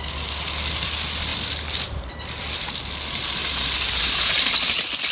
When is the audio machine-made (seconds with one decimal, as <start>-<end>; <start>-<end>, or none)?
3.4-4.0